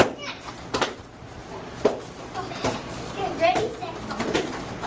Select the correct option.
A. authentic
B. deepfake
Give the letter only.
B